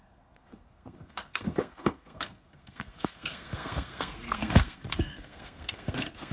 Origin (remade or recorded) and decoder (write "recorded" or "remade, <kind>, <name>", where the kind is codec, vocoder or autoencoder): remade, codec, SNAC